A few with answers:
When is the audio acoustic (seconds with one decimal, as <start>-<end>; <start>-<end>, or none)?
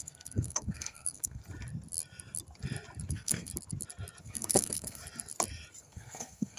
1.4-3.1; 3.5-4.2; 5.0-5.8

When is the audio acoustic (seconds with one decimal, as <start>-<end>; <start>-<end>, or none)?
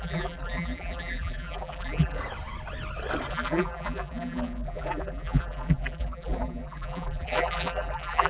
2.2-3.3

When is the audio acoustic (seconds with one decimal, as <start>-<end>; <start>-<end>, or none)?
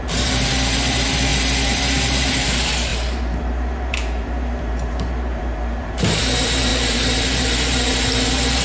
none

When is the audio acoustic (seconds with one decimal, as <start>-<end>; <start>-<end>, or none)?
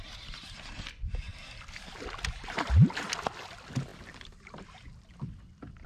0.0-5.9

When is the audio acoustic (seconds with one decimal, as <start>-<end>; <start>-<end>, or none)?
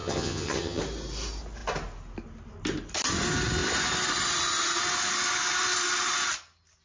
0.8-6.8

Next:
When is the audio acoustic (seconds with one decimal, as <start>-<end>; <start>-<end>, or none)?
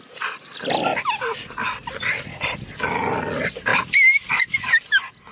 0.0-5.3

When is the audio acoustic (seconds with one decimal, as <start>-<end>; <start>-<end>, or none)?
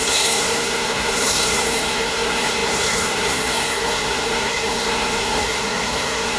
none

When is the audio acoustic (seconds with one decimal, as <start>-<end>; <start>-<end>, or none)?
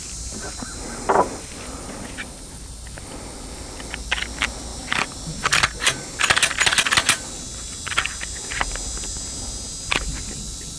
0.0-10.8